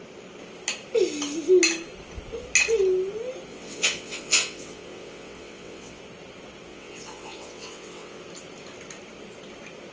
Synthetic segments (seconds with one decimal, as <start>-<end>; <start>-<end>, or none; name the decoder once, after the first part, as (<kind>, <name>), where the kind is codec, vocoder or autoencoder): 3.5-6.0 (vocoder, WaveNeXt); 6.7-8.2